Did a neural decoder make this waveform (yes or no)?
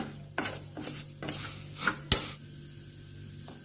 no